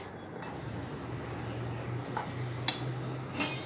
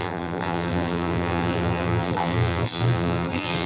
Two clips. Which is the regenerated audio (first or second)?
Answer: second